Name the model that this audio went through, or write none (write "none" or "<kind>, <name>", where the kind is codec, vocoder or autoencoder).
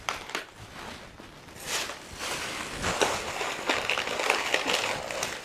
none